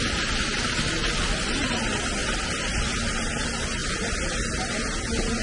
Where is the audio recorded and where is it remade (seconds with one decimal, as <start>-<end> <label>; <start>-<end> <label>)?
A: 0.0-2.2 recorded; 2.2-2.8 remade; 2.8-3.8 recorded; 3.8-4.3 remade; 4.3-5.4 recorded